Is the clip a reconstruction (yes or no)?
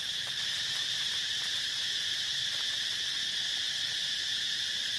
yes